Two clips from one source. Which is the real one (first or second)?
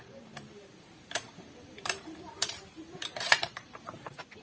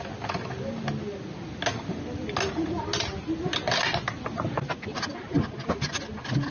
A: second